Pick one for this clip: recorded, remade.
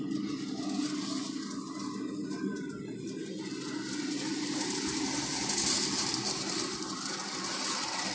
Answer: recorded